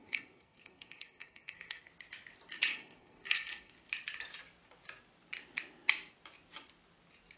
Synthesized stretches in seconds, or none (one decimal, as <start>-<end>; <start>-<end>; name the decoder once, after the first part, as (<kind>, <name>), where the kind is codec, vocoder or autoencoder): 0.0-1.9 (codec, SNAC); 2.7-3.7